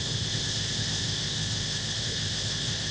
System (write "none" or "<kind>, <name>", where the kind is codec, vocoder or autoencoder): codec, ZipCodec